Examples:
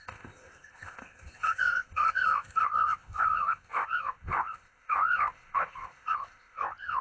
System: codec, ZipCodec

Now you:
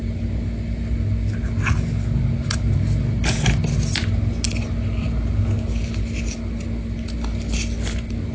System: none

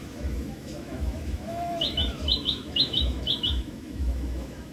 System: autoencoder, DAC-VAE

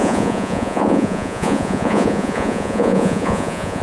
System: vocoder, Vocos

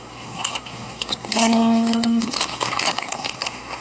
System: codec, SNAC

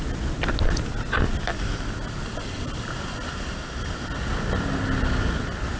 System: none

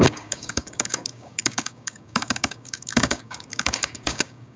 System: codec, DAC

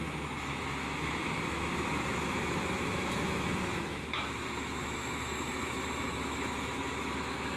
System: autoencoder, DAC-VAE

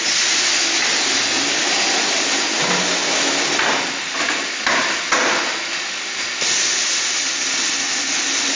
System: none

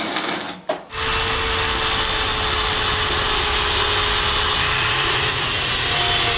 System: none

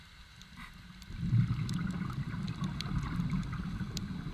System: none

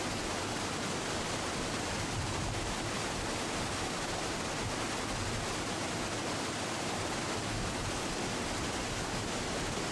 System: none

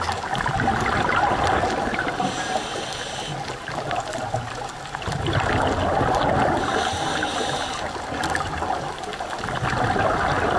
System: none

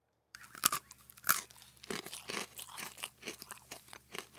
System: vocoder, BigVGAN v2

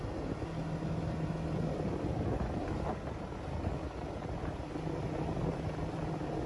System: none